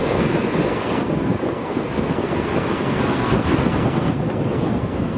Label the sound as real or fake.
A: fake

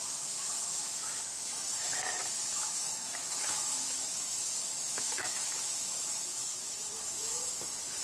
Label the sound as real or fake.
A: fake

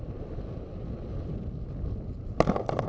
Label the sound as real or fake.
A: real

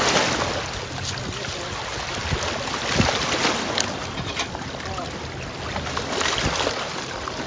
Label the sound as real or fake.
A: real